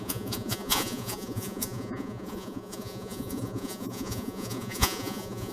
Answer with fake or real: fake